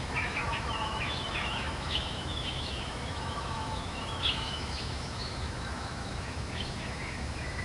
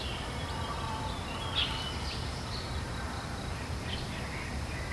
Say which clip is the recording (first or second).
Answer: second